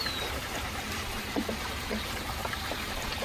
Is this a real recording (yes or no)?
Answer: no